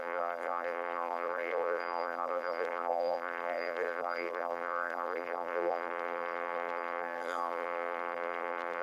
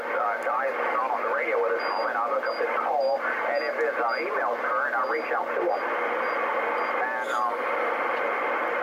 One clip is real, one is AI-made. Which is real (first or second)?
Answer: second